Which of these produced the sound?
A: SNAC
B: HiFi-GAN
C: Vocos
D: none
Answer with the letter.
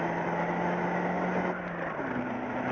D